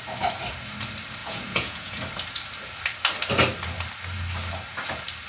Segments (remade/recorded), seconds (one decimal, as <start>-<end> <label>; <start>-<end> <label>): 0.0-1.2 recorded; 1.2-2.0 remade; 2.0-5.3 recorded